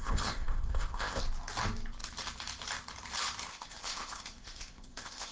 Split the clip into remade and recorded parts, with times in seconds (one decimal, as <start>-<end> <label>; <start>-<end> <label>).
0.0-1.2 remade; 1.2-3.5 recorded; 3.5-5.3 remade